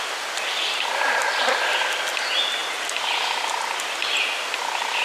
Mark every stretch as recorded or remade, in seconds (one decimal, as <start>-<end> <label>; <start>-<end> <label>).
0.0-5.0 recorded